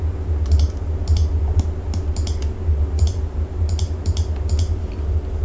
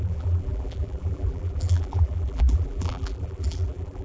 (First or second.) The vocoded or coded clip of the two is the second